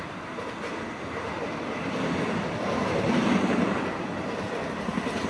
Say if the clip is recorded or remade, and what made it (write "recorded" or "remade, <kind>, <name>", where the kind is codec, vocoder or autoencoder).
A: recorded